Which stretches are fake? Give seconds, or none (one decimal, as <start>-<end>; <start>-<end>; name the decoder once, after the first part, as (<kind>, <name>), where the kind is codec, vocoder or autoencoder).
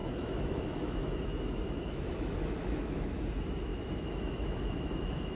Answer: 0.0-3.2 (autoencoder, DAC-VAE); 3.7-5.4